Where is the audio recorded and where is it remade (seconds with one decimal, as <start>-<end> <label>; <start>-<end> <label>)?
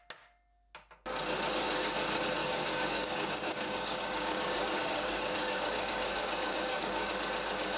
0.0-2.4 recorded; 2.4-7.1 remade; 7.1-7.8 recorded